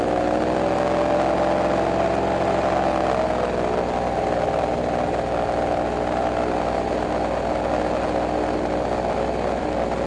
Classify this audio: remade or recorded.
recorded